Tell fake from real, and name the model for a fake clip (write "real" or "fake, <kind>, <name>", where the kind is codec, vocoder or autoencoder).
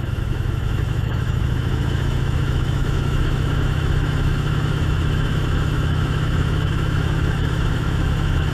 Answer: fake, autoencoder, DAC-VAE